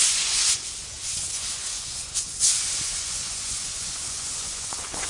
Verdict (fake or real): fake